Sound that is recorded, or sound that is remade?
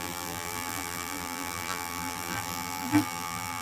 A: remade